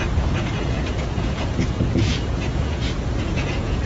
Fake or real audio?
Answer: fake